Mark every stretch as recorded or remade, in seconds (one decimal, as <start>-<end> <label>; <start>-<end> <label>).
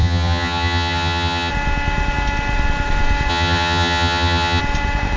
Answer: 0.0-1.5 remade; 1.5-3.3 recorded; 3.3-4.6 remade; 4.6-5.2 recorded